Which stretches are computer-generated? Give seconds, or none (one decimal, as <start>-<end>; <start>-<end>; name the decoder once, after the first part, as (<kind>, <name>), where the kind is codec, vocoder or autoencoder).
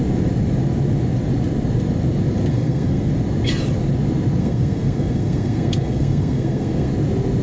2.5-3.1 (codec, SNAC); 4.4-6.9